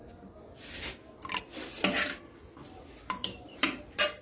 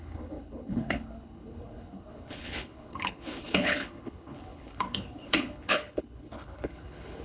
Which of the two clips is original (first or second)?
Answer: first